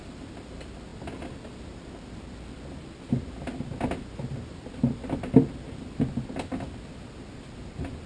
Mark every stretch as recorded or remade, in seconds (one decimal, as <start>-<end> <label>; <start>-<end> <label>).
0.0-8.1 recorded